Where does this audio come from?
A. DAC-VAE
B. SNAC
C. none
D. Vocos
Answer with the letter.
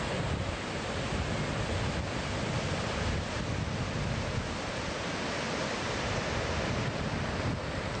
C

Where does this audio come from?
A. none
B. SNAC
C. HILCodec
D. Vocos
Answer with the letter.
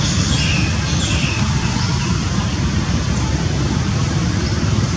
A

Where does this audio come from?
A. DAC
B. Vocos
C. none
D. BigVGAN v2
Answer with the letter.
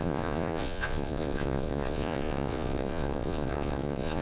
B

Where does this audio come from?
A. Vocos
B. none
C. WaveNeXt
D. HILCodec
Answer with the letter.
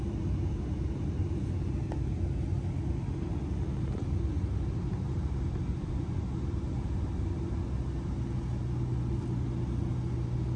B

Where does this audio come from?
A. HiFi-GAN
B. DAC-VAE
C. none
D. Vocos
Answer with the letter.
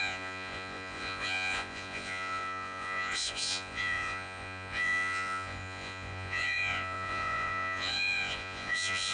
D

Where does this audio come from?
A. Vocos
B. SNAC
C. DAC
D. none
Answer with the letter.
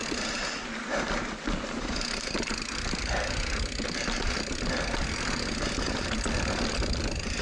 D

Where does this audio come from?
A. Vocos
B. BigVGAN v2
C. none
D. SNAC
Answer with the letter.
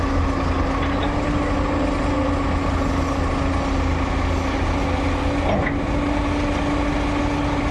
C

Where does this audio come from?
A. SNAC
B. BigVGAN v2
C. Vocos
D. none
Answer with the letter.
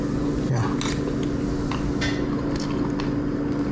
D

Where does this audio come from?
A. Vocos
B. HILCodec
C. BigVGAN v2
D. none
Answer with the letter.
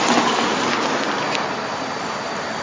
D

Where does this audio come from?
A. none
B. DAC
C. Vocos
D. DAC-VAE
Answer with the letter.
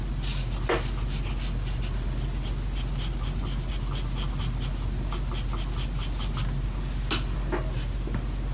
A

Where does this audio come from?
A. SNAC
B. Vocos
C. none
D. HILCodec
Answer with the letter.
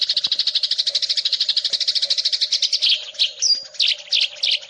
C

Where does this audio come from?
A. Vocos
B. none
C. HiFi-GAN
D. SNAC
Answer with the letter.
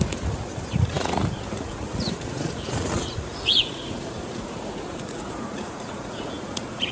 A